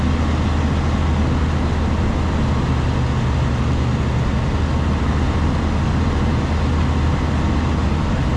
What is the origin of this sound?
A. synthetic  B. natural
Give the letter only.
B